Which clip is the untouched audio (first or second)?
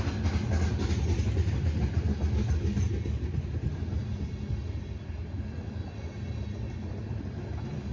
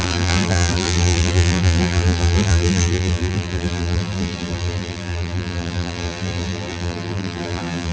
first